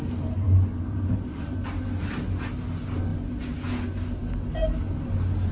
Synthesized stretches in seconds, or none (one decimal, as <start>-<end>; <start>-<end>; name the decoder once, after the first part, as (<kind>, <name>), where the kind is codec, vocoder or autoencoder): 0.0-2.2 (vocoder, BigVGAN v2)

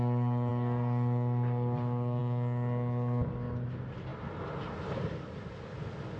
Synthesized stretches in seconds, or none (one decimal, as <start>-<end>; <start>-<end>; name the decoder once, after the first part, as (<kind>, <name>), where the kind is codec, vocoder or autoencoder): none